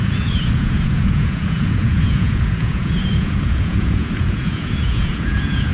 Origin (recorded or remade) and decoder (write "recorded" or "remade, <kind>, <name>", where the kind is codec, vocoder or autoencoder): remade, vocoder, Vocos